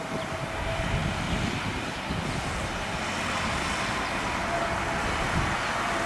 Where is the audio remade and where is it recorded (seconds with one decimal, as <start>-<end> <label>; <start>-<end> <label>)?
0.0-6.1 recorded